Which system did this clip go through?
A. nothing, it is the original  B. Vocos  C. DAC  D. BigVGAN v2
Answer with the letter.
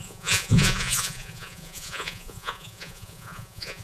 B